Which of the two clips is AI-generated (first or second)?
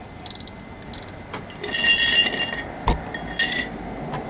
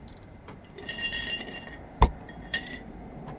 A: second